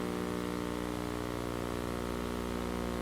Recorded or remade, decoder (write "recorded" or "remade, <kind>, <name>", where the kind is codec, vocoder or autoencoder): recorded